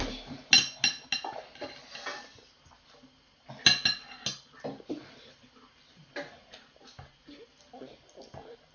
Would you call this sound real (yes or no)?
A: yes